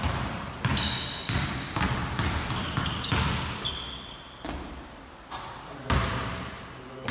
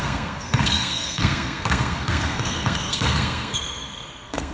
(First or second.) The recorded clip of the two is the first